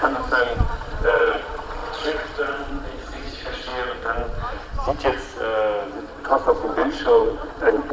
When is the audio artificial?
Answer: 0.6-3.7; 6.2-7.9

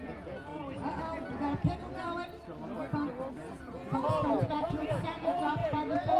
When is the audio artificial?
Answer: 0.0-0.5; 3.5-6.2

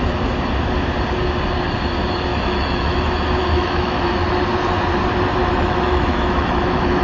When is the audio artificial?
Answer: 2.3-3.0; 3.4-4.0; 5.4-7.0

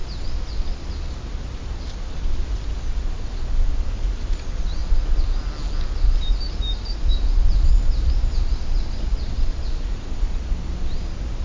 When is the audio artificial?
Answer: 9.9-10.4